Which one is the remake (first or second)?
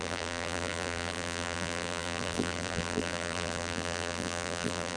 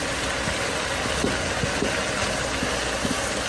first